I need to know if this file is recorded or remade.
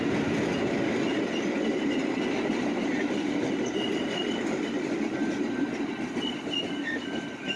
recorded